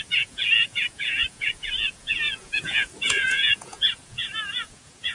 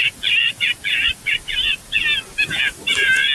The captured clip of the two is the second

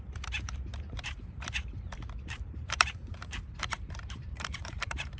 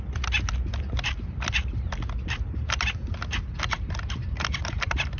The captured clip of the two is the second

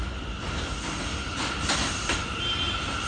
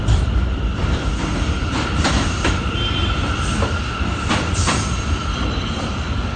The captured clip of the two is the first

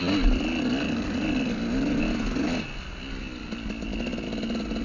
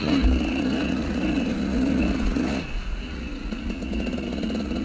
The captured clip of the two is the first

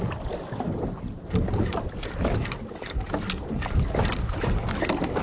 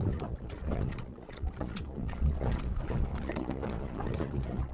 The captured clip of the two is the first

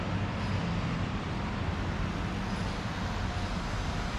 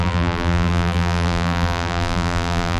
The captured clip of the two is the first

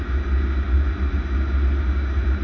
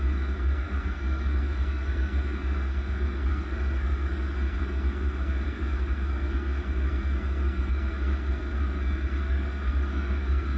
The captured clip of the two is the first